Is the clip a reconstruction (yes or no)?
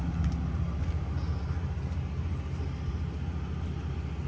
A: no